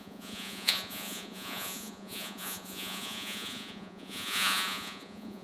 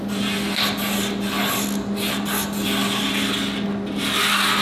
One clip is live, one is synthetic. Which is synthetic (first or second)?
first